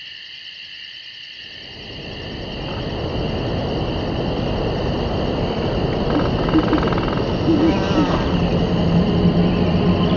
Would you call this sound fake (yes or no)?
no